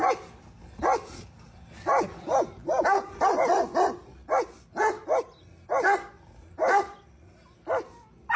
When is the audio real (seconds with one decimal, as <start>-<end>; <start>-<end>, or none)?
0.0-8.4